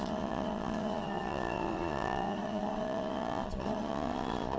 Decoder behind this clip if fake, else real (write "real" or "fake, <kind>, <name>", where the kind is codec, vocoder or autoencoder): fake, vocoder, Vocos